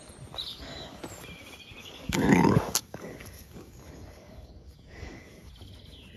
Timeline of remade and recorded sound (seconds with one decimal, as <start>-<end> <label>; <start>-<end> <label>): 0.0-0.5 recorded; 0.5-1.0 remade; 1.0-1.8 recorded; 1.8-5.5 remade; 5.5-6.2 recorded